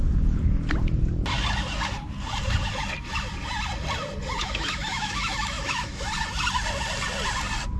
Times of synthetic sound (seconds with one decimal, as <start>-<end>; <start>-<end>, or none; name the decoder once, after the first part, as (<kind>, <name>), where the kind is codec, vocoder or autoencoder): 4.4-6.0 (autoencoder, DAC-VAE)